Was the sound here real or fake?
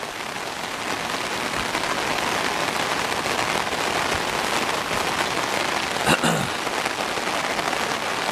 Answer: real